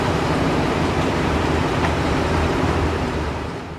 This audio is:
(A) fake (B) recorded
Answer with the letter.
A